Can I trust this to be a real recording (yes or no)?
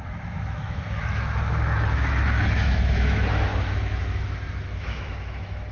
no